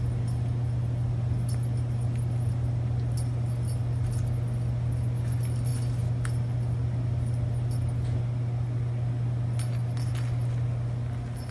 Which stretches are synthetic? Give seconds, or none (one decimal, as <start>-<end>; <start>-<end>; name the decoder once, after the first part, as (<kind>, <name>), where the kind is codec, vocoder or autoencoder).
none